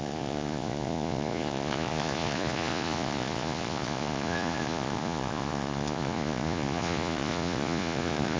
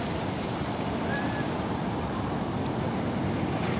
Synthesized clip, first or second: first